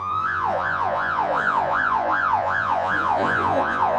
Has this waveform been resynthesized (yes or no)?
yes